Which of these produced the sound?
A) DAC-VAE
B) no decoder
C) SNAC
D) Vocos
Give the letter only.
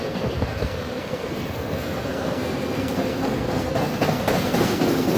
C